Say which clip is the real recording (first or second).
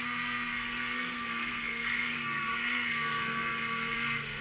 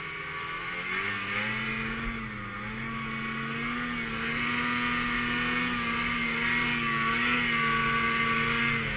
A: second